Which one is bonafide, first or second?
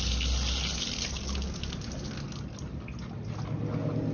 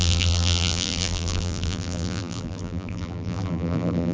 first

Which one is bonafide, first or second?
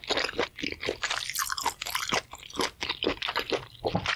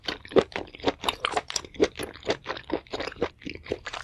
first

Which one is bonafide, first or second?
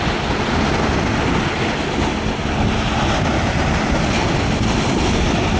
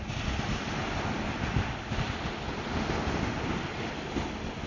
first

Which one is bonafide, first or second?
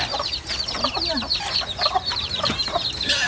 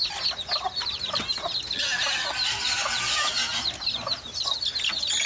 second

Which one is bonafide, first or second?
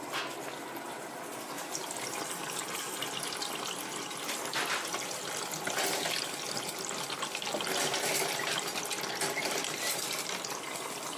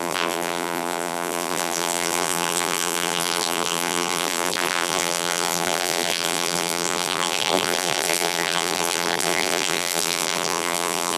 first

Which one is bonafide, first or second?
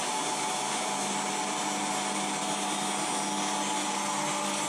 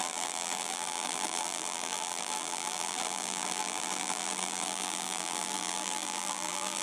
first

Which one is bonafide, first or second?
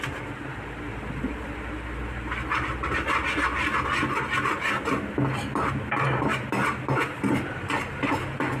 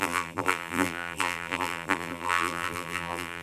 first